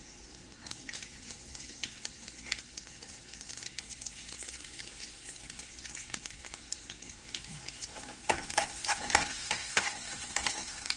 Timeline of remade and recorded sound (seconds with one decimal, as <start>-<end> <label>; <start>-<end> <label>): 0.0-11.0 remade